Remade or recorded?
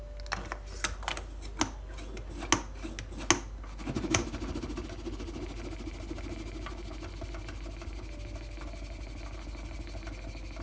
recorded